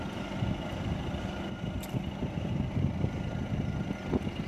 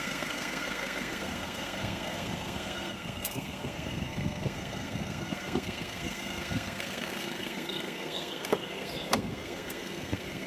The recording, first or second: first